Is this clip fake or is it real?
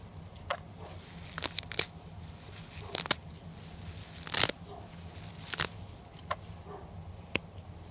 real